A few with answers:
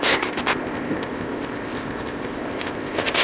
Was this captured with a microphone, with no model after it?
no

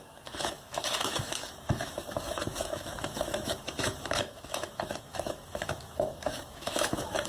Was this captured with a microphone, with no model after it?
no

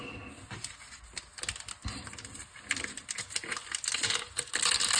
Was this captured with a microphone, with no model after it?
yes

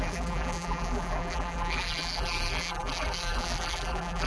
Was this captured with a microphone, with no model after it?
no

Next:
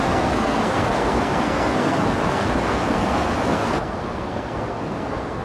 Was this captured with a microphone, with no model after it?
no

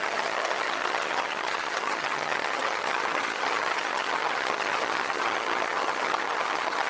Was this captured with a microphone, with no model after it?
no